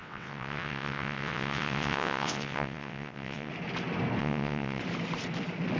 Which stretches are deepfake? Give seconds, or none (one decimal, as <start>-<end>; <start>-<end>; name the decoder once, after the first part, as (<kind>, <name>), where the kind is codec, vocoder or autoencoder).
0.0-3.5 (vocoder, WaveNeXt); 4.2-4.8